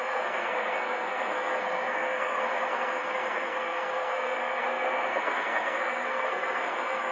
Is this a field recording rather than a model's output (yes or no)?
no